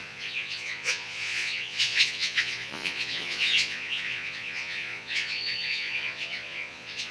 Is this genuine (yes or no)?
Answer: no